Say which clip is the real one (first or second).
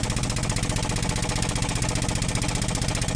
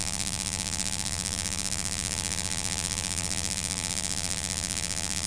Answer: first